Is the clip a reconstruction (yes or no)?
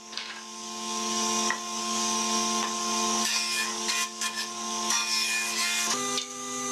yes